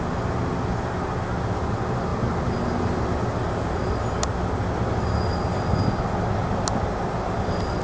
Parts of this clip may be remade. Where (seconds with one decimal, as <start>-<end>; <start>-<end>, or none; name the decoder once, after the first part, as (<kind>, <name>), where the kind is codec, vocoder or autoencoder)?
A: none